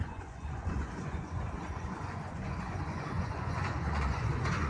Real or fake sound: fake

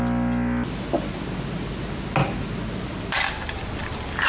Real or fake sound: real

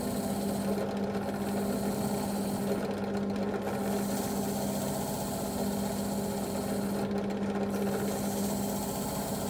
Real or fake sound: real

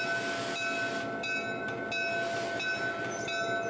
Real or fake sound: real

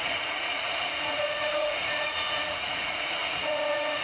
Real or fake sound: fake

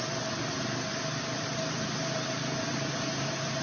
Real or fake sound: real